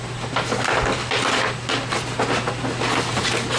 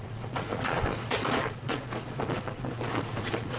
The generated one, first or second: second